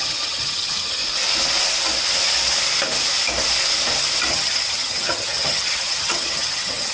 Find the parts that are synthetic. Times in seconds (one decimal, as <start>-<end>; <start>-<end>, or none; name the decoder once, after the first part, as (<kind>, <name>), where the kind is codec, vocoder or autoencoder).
0.0-1.0 (vocoder, HiFi-GAN); 4.3-6.9

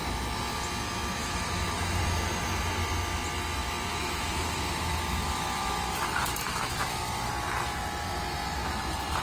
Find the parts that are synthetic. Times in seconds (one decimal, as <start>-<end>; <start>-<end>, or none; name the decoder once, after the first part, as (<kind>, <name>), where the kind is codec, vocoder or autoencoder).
1.2-2.0 (autoencoder, DAC-VAE); 3.9-7.3

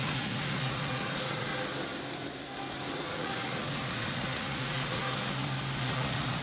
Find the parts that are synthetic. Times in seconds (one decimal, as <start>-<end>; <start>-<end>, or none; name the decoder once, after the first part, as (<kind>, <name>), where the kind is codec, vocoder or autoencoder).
0.0-1.5 (vocoder, Vocos); 3.0-5.0; 5.8-6.4

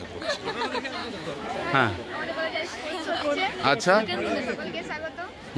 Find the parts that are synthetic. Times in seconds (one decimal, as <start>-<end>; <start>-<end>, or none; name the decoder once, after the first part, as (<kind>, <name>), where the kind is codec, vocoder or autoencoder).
1.0-4.4 (autoencoder, DAC-VAE)

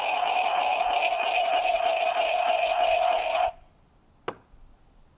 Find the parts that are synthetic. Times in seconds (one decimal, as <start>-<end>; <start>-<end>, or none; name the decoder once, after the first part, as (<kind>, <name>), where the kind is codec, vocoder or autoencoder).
none

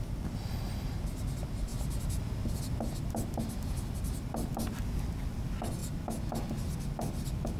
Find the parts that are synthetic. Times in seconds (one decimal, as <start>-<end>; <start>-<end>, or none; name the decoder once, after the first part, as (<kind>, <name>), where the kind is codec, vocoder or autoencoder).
none